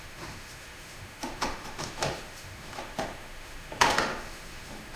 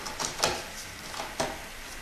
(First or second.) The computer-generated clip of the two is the first